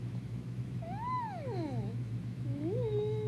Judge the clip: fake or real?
fake